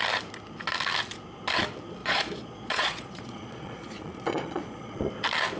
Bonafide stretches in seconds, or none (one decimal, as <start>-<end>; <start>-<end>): 0.0-2.0; 5.1-5.6